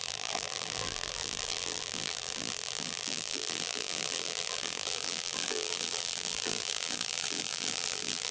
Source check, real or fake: fake